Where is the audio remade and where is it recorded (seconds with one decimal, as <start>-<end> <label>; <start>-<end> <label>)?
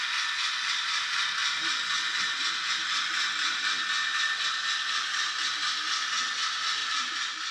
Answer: 0.0-7.5 recorded